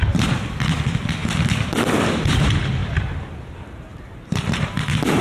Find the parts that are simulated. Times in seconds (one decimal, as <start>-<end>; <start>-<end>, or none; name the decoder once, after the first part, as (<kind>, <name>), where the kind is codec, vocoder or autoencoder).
0.0-5.2 (vocoder, BigVGAN v2)